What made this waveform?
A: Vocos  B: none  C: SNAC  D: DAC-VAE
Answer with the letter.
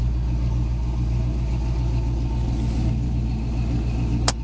B